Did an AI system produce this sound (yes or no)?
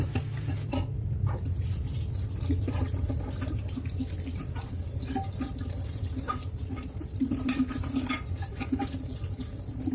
no